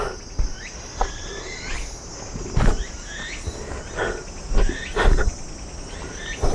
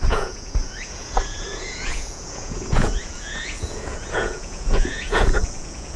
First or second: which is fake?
second